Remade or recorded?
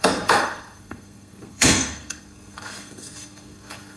remade